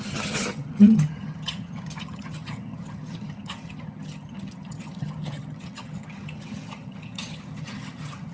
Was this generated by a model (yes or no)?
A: yes